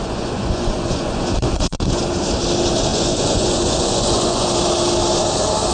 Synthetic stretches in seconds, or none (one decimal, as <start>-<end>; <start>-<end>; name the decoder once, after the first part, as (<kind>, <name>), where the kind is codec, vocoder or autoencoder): 0.0-2.0 (vocoder, Vocos); 2.9-4.5